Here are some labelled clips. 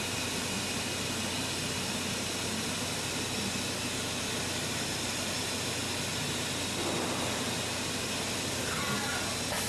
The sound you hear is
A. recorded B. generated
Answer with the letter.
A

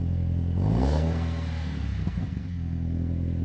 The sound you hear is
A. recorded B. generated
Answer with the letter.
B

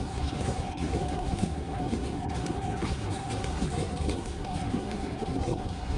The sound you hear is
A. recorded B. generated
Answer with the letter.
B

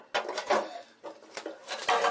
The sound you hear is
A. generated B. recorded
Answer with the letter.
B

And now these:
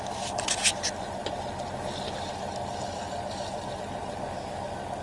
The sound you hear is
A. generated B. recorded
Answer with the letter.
B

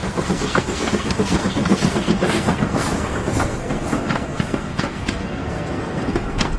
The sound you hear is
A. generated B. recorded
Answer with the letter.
A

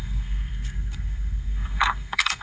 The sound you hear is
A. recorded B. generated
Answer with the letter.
B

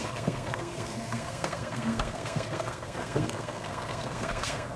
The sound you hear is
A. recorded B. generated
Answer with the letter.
B